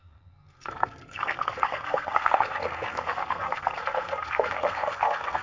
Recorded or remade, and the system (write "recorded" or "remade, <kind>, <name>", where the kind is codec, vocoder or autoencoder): remade, codec, SNAC